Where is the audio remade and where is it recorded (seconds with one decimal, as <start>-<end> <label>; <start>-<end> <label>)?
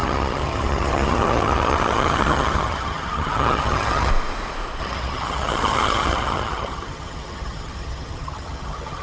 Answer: 0.0-4.1 remade; 4.1-4.8 recorded; 4.8-9.0 remade